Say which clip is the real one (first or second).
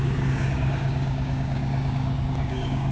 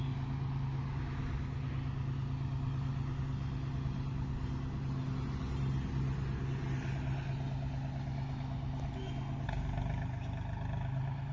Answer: second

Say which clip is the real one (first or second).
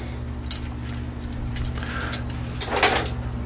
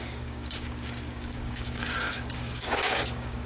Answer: first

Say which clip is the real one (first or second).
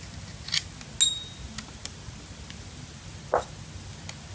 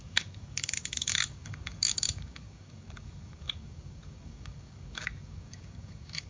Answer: first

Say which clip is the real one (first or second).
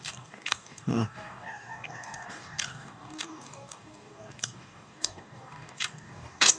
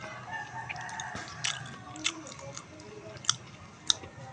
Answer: second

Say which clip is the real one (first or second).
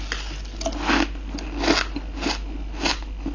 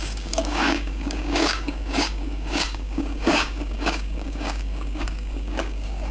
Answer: first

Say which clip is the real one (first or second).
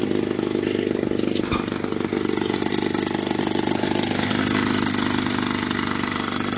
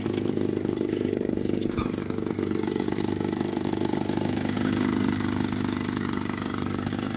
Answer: first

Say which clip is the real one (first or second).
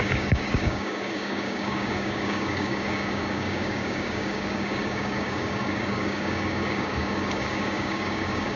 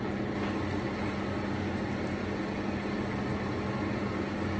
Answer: second